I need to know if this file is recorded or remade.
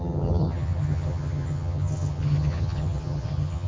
remade